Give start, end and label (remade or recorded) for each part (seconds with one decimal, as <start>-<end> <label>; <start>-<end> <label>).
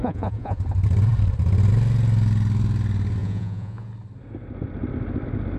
0.0-0.6 remade; 0.6-3.2 recorded; 3.2-3.9 remade; 3.9-5.6 recorded